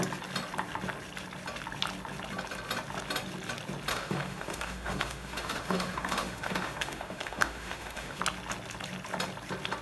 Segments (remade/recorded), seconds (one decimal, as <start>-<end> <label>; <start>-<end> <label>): 0.0-3.9 recorded; 3.9-8.2 remade; 8.2-9.8 recorded